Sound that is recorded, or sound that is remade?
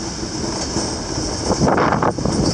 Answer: recorded